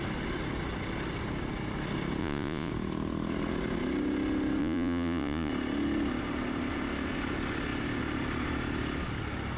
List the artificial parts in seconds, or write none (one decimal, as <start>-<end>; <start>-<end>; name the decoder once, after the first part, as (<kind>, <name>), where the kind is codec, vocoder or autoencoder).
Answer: 2.2-2.7 (vocoder, Vocos); 4.6-5.5